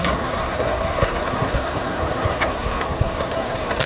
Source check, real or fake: fake